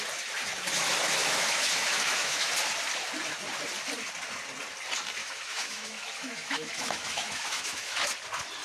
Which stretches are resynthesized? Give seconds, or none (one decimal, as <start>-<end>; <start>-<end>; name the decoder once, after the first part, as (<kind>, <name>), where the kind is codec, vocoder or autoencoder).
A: 1.2-2.5 (autoencoder, DAC-VAE); 5.2-8.1